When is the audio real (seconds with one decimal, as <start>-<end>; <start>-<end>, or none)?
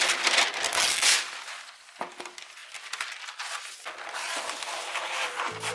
0.0-5.7